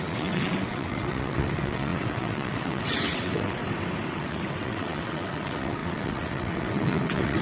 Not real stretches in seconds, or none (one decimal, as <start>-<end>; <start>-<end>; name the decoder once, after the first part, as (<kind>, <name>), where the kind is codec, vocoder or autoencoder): 0.0-3.6 (vocoder, WaveNeXt); 4.1-7.4